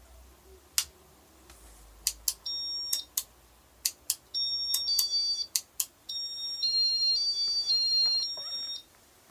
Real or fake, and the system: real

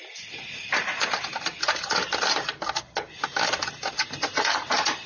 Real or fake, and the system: real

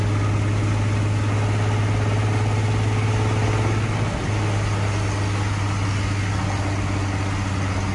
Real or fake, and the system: real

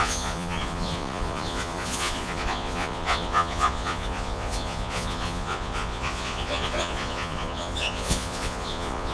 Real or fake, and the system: fake, vocoder, Vocos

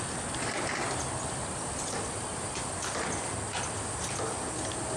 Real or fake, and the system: real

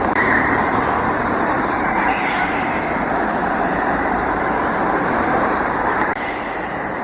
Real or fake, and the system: fake, vocoder, BigVGAN v2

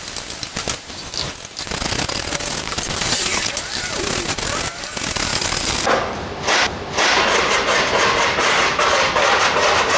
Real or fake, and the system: real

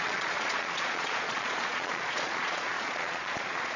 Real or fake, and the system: fake, vocoder, Vocos